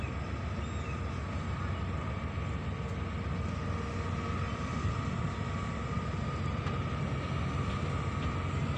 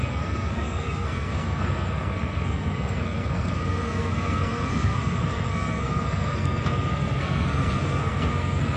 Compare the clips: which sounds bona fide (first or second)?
first